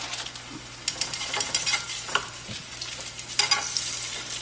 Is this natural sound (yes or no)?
yes